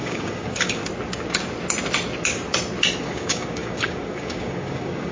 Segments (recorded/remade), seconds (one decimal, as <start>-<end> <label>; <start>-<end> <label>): 0.0-0.8 remade; 0.8-3.0 recorded; 3.0-5.1 remade